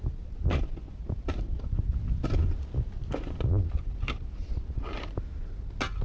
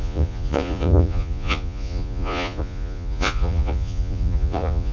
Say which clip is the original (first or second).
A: first